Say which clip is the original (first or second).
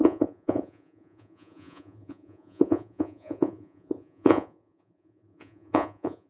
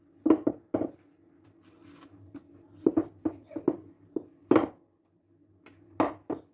second